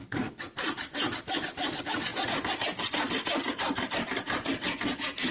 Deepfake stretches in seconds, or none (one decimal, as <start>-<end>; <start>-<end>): none